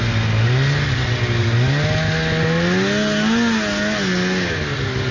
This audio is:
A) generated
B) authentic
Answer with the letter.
B